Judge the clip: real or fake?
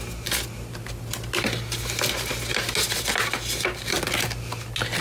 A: real